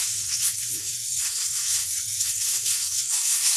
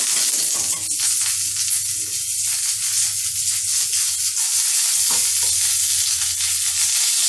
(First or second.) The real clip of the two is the second